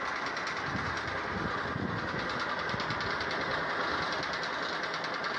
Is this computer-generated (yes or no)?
no